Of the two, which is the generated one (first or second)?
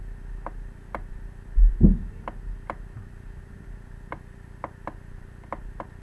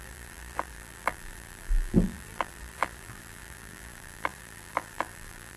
second